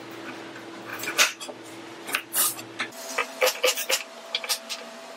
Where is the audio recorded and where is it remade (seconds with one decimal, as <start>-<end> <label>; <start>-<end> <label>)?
0.0-0.9 recorded; 0.9-2.6 remade; 2.6-3.2 recorded; 3.2-4.3 remade; 4.3-5.2 recorded